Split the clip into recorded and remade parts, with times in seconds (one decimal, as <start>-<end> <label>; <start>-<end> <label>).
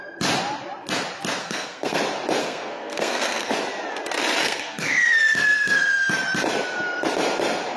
0.0-1.4 recorded; 1.4-2.0 remade; 2.0-2.4 recorded; 2.4-3.5 remade; 3.5-4.4 recorded; 4.4-6.1 remade; 6.1-7.8 recorded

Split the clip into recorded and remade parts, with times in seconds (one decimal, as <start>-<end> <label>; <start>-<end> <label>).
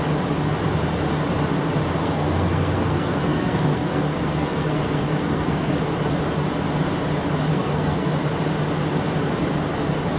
0.0-2.0 recorded; 2.0-5.7 remade; 5.7-7.5 recorded; 7.5-8.1 remade; 8.1-10.2 recorded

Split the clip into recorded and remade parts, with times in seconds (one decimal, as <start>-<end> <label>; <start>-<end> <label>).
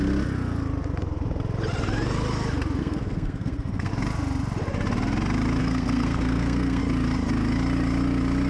0.0-2.8 recorded; 2.8-3.9 remade; 3.9-5.6 recorded; 5.6-6.8 remade; 6.8-8.5 recorded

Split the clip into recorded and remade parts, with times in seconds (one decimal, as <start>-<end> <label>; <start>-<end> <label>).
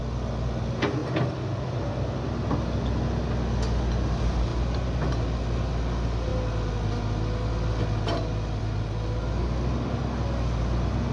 0.0-11.1 recorded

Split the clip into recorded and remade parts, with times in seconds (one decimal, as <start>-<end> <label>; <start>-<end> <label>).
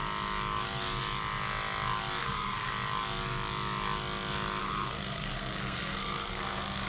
0.0-2.2 recorded; 2.2-2.7 remade; 2.7-4.6 recorded; 4.6-6.9 remade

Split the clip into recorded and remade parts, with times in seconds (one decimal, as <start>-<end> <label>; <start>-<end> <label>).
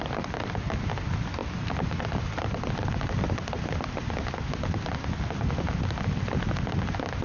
0.0-7.2 recorded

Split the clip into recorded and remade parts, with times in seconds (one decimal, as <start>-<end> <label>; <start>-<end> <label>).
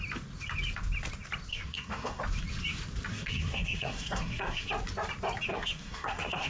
0.0-1.5 recorded; 1.5-2.2 remade; 2.2-3.1 recorded; 3.1-4.7 remade; 4.7-5.5 recorded; 5.5-6.5 remade